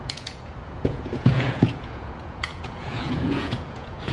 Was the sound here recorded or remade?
remade